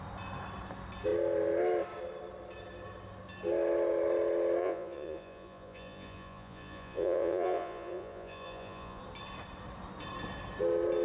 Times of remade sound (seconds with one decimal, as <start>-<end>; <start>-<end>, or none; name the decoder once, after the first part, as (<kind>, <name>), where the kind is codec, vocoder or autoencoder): 4.6-9.0 (vocoder, Vocos)